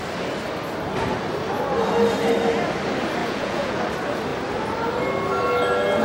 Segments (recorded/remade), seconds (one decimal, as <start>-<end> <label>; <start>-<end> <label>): 0.0-3.2 recorded; 3.2-3.8 remade; 3.8-6.0 recorded